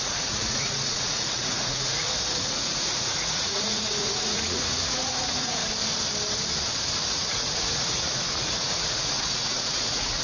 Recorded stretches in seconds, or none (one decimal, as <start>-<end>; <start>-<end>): 5.6-7.1